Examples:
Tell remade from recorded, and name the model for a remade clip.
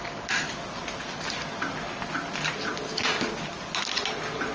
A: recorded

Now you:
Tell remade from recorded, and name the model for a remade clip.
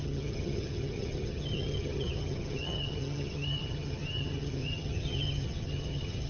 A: remade, vocoder, HiFi-GAN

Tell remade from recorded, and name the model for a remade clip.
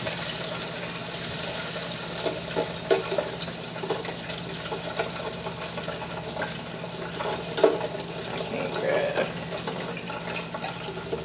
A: recorded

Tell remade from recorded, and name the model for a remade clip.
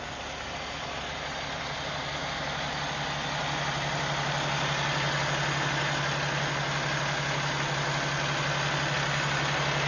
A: recorded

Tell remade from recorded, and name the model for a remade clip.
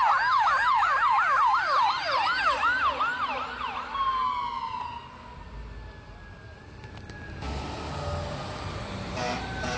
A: recorded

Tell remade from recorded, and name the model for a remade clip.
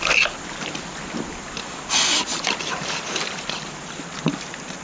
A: recorded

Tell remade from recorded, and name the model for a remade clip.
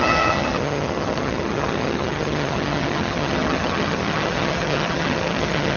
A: remade, vocoder, HiFi-GAN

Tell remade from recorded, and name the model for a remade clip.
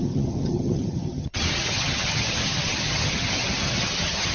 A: remade, vocoder, HiFi-GAN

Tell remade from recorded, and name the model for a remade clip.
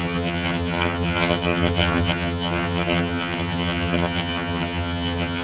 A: remade, vocoder, HiFi-GAN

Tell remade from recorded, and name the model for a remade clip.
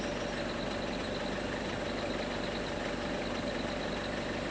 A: recorded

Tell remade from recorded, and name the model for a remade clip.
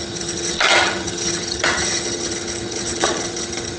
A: remade, vocoder, HiFi-GAN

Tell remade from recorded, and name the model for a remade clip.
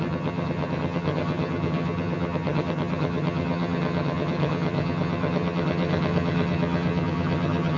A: remade, vocoder, HiFi-GAN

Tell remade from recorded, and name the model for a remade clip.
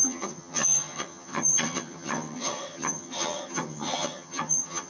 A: remade, vocoder, HiFi-GAN